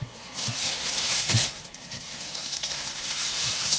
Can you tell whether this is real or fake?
fake